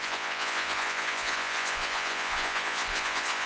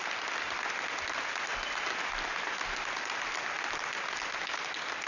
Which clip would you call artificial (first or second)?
first